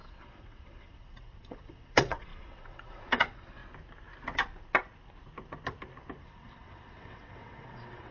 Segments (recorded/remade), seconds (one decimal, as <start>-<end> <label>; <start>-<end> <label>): 0.0-3.6 remade; 3.6-6.2 recorded; 6.2-8.1 remade

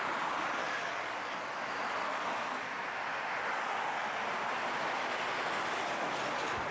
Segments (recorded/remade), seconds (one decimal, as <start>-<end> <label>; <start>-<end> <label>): 0.0-0.6 recorded; 0.6-1.7 remade; 1.7-6.7 recorded

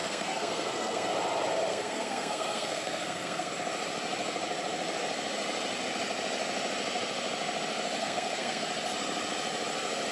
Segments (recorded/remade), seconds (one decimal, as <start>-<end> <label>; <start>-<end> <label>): 0.0-1.1 remade; 1.1-1.7 recorded; 1.7-3.5 remade; 3.5-8.0 recorded; 8.0-8.6 remade; 8.6-10.1 recorded

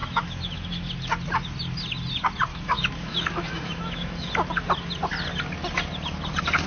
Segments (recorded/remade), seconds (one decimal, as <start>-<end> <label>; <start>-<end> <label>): 0.0-0.9 remade; 0.9-2.5 recorded; 2.5-4.3 remade; 4.3-6.7 recorded

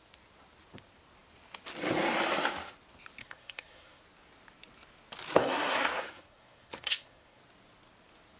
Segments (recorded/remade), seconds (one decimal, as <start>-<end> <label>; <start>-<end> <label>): 0.0-3.2 recorded; 3.2-4.0 remade; 4.0-5.4 recorded; 5.4-7.4 remade; 7.4-8.4 recorded

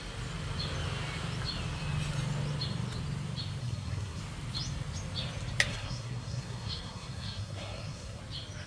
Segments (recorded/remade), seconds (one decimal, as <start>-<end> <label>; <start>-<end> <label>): 0.0-3.6 recorded; 3.6-4.2 remade; 4.2-5.7 recorded; 5.7-8.2 remade; 8.2-8.7 recorded

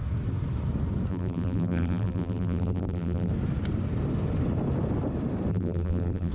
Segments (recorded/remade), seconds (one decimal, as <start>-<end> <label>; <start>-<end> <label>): 0.0-1.1 recorded; 1.1-3.3 remade; 3.3-5.5 recorded; 5.5-6.3 remade

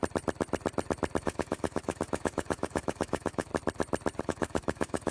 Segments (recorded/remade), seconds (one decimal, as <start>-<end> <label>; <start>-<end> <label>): 0.0-1.2 recorded; 1.2-3.5 remade; 3.5-4.2 recorded; 4.2-5.1 remade